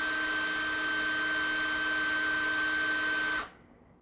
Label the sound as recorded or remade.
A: recorded